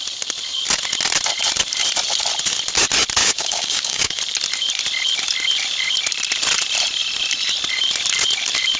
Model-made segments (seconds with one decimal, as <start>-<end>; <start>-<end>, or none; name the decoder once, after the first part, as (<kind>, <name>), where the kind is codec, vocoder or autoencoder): 3.2-4.2 (codec, DAC)